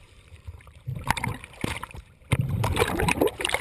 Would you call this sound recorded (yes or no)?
no